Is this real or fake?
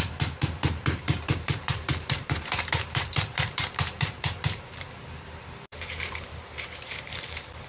fake